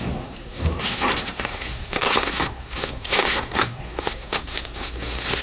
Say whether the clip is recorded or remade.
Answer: remade